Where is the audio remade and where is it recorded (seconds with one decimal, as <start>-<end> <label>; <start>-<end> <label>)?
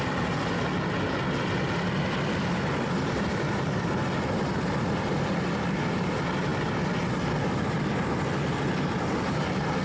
0.0-9.8 recorded